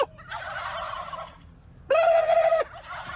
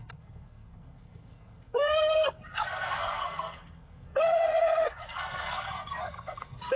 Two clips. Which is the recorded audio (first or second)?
first